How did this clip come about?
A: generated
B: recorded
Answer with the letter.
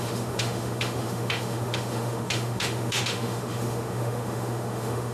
A